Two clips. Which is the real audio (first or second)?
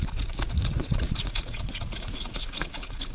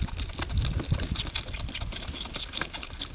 second